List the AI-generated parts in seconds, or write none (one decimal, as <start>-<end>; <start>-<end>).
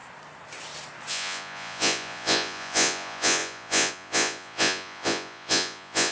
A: 1.1-6.1